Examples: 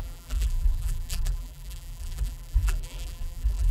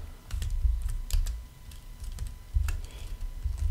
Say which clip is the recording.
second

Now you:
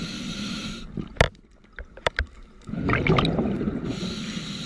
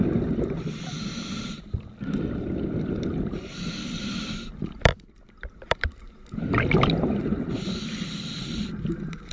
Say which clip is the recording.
first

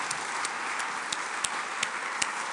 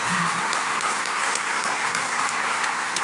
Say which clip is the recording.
first